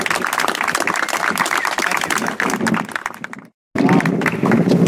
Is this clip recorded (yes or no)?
yes